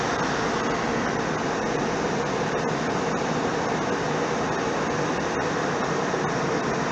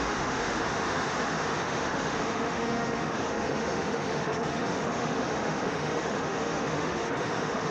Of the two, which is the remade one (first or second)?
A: second